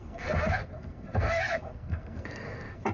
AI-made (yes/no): yes